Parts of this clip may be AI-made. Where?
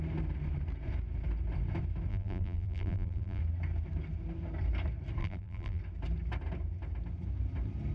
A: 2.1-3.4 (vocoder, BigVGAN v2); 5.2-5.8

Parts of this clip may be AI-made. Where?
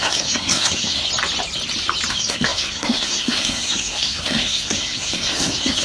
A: 0.0-1.0 (codec, SNAC); 2.1-5.8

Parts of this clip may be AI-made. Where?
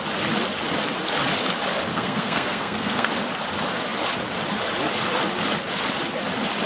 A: 1.9-3.1 (codec, SNAC)